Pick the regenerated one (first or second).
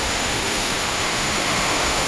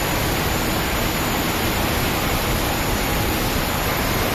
first